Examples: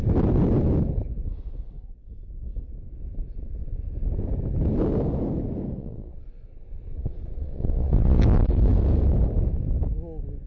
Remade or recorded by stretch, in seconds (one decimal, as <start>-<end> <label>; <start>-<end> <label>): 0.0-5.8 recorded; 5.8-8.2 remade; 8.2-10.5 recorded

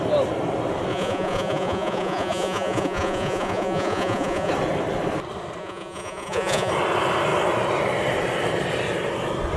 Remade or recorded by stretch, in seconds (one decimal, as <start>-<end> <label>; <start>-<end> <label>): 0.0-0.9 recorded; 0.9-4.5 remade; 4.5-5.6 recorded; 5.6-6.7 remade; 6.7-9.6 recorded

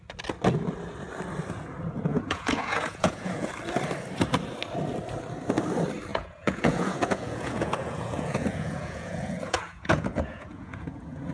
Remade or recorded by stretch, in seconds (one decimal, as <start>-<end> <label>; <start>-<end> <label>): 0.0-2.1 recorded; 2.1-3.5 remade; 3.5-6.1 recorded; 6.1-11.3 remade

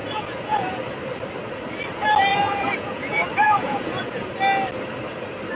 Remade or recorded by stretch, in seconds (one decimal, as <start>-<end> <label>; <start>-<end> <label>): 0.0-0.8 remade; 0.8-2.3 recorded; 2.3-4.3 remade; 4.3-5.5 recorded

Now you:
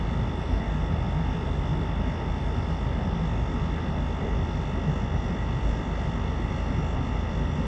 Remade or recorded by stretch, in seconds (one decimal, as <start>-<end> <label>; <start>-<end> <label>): 0.0-7.7 recorded